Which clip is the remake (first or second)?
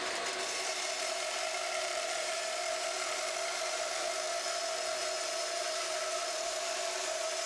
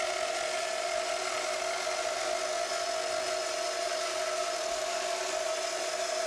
first